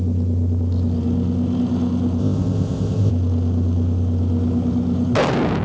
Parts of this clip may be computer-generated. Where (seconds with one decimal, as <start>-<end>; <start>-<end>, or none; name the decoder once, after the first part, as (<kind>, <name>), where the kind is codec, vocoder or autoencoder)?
2.2-3.1 (codec, ZipCodec)